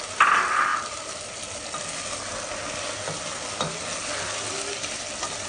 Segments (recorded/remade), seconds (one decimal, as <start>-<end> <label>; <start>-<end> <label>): 0.0-5.5 recorded